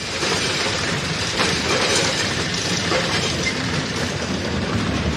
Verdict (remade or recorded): remade